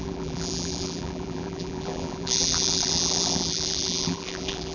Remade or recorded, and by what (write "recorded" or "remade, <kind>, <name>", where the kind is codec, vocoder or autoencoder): remade, vocoder, BigVGAN v2